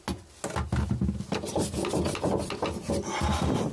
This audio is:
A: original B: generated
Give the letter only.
A